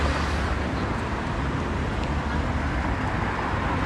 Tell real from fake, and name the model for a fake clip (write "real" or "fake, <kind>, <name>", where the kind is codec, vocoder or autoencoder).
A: real